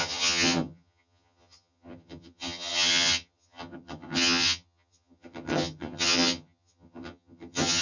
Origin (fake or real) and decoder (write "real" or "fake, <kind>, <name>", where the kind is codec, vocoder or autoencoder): fake, vocoder, HiFi-GAN